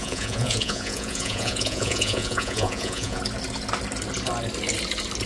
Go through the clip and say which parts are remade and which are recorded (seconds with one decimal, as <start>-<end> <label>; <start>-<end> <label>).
0.0-3.2 remade; 3.2-5.3 recorded